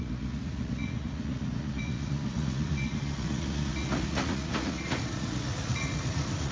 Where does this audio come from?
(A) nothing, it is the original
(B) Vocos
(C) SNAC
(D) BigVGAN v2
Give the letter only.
B